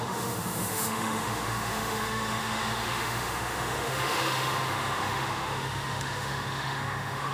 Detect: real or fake fake